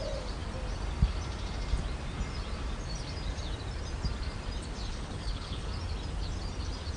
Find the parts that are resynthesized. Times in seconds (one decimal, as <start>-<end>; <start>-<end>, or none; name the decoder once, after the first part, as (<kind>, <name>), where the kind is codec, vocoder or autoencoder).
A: 4.9-5.7 (codec, HILCodec)